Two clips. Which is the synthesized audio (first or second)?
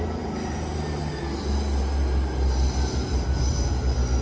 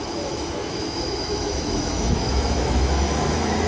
second